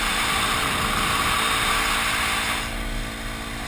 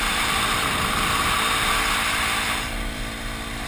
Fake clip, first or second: second